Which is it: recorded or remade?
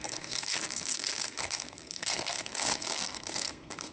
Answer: remade